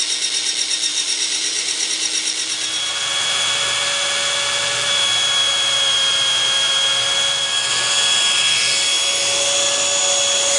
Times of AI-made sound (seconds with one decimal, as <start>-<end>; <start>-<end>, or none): 0.9-1.9